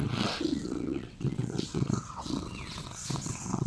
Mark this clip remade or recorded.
remade